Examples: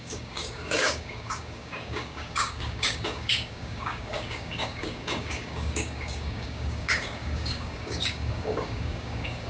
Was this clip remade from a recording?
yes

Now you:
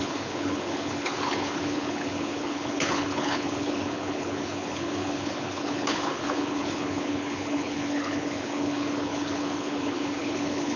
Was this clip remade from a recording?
yes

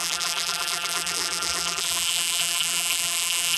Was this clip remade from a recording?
yes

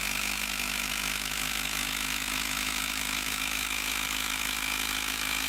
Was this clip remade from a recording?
yes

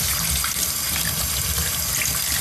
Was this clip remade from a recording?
no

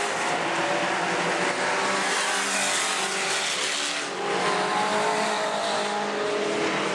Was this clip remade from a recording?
no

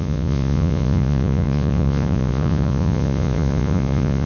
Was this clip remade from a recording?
yes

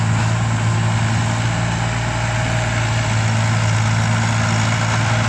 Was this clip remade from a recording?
no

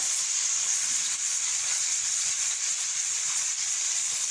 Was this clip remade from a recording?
yes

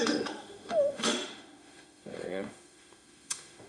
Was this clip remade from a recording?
yes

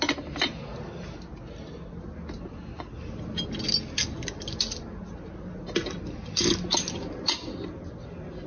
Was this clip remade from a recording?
no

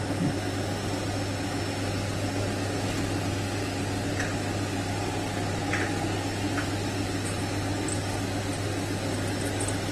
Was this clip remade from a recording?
no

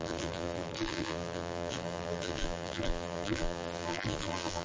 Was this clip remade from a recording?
yes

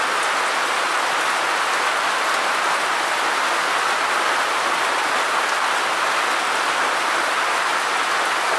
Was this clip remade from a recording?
no